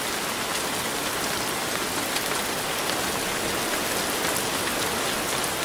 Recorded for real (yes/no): yes